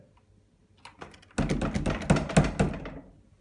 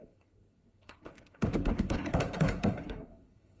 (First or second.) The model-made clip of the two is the second